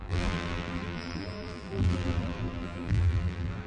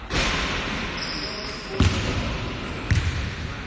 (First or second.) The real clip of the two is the second